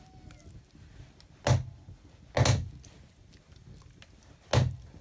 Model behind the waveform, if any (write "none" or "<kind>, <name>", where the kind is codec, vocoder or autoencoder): none